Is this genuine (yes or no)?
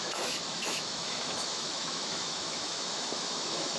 no